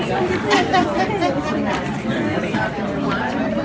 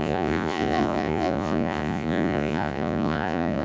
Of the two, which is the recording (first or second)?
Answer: first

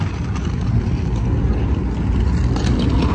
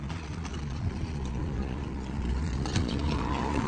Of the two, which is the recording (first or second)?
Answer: first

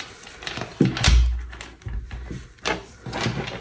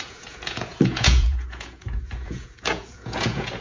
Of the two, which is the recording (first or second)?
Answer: first